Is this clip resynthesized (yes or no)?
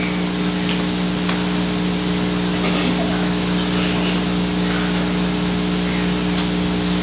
no